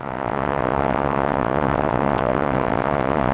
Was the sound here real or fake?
fake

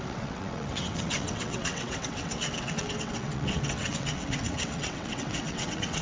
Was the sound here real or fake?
fake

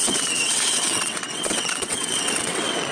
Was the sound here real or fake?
fake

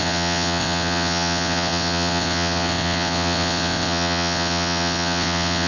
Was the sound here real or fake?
fake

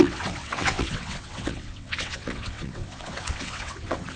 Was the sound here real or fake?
fake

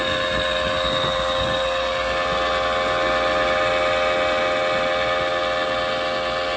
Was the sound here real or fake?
real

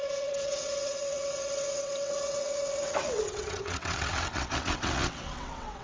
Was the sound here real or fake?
fake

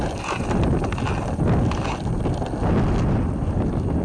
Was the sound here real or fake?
real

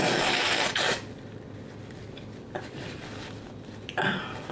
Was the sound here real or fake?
real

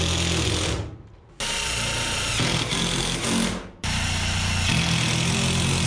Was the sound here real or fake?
real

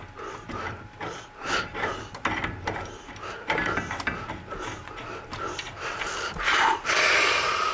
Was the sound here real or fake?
real